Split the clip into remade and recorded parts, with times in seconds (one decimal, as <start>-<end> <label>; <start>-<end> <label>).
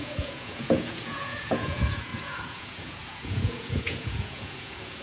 0.0-5.0 remade